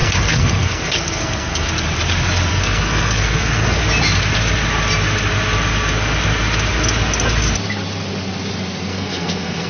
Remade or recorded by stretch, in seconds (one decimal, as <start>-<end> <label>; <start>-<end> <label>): 0.0-1.7 remade; 1.7-2.5 recorded; 2.5-3.8 remade; 3.8-8.9 recorded; 8.9-9.7 remade

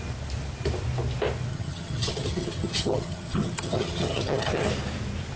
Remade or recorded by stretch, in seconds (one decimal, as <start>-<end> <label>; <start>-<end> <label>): 0.0-1.5 recorded; 1.5-4.7 remade; 4.7-5.4 recorded

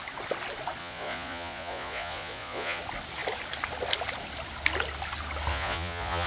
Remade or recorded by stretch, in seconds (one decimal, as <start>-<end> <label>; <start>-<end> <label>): 0.0-0.8 recorded; 0.8-2.8 remade; 2.8-5.5 recorded; 5.5-6.3 remade